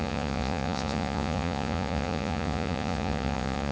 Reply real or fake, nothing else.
fake